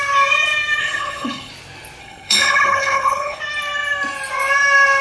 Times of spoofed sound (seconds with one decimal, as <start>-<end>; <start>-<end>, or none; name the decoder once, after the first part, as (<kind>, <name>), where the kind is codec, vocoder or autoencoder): 0.8-1.5 (codec, HILCodec); 2.0-3.4